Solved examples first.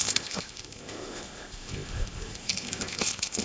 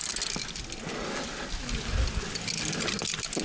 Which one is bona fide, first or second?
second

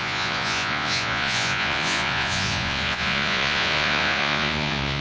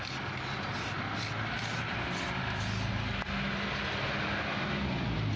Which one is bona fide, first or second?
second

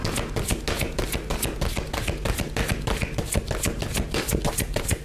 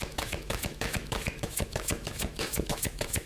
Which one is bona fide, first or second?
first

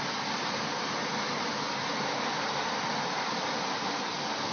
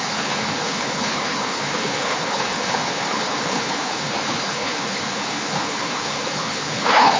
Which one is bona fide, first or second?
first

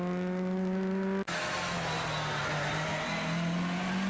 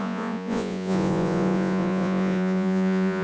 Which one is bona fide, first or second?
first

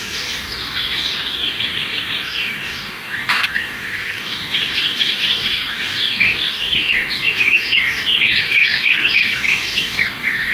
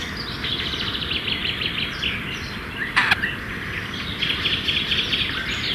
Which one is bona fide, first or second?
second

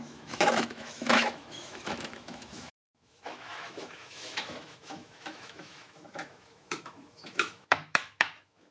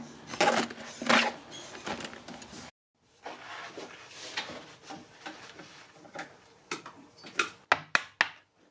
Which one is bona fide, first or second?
second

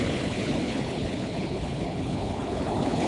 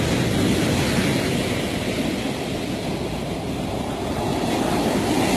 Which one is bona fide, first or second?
second